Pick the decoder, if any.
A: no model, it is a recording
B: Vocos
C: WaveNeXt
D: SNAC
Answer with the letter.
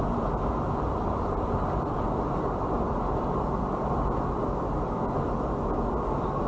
A